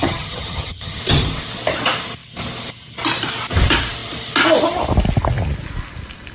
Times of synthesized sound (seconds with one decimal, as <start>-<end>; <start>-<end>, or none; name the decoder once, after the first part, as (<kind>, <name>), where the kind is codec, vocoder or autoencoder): 0.0-1.0 (vocoder, HiFi-GAN)